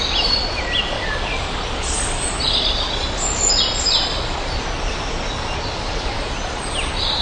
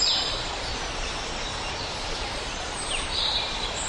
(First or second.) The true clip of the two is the first